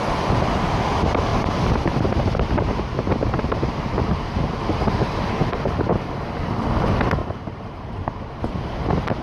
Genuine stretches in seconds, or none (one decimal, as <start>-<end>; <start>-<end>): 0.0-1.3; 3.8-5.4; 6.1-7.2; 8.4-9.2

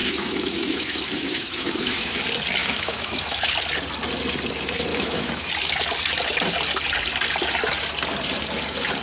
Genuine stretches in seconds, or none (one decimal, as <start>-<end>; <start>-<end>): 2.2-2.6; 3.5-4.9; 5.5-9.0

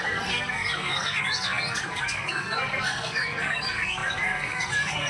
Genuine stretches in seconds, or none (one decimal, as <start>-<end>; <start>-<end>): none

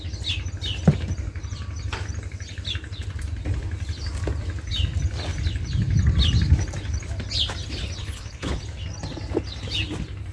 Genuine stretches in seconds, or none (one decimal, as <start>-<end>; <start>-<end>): 0.0-8.0; 8.6-10.3

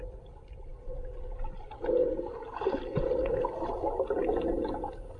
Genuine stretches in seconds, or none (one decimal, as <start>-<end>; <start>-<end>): 0.0-5.2

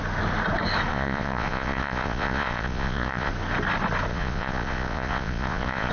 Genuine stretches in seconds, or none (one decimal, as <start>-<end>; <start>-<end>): 0.0-0.9; 3.3-4.1